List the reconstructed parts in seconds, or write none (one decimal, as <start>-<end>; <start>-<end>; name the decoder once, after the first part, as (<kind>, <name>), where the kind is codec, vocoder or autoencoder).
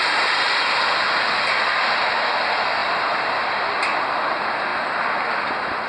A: none